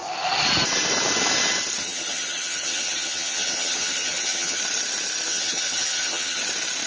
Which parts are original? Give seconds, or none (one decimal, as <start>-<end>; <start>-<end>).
0.0-1.8; 4.6-5.3; 6.4-6.9